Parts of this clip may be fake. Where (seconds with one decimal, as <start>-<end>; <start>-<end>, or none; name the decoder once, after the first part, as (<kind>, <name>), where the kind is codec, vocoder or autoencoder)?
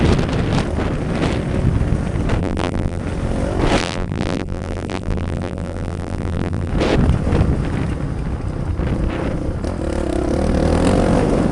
2.4-3.0 (vocoder, BigVGAN v2); 3.8-6.7